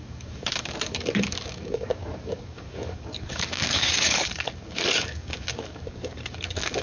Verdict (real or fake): fake